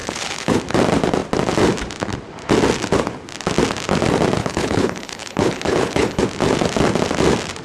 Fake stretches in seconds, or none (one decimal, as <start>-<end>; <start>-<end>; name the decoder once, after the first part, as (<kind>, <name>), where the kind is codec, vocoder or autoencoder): 0.0-0.6 (codec, HILCodec); 4.4-6.2